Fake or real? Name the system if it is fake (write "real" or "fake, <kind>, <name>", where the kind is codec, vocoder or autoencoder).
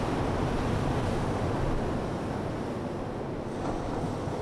real